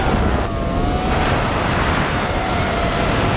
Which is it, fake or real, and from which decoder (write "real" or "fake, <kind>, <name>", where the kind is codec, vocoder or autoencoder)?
real